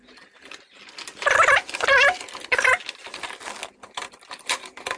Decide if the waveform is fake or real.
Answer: real